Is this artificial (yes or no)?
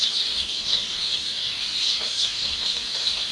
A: yes